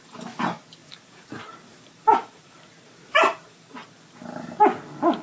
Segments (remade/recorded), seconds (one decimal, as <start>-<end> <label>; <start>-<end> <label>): 0.0-0.8 recorded; 0.8-3.7 remade; 3.7-5.2 recorded